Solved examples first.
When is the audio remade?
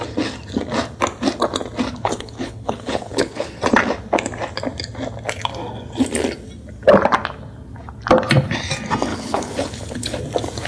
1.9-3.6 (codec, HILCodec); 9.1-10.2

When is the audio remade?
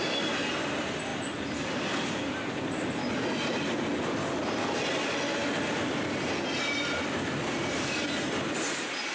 none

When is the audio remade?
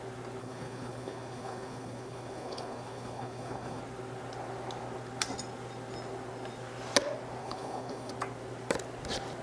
0.4-3.8 (codec, HILCodec); 7.4-8.1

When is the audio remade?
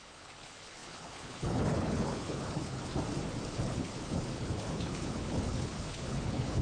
0.0-2.9 (codec, HILCodec); 3.5-6.6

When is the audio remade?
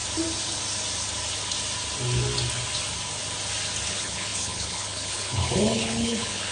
3.9-6.5 (codec, HILCodec)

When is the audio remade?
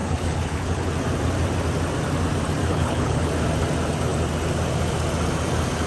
0.0-0.9 (codec, HILCodec); 2.7-3.3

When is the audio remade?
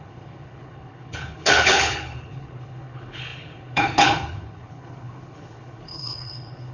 0.0-6.7 (codec, HILCodec)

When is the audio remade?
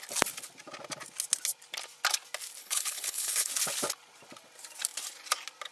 2.6-3.5 (codec, HILCodec)